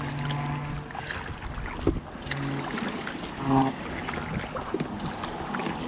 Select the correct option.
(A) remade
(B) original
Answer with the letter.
B